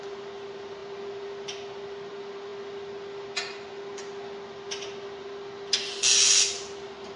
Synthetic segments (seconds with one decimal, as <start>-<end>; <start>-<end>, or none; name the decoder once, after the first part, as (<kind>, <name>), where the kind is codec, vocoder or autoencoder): none